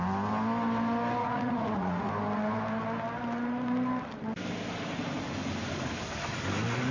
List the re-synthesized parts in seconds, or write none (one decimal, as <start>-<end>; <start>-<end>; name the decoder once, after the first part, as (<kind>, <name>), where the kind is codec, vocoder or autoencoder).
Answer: 1.2-2.1 (vocoder, Vocos)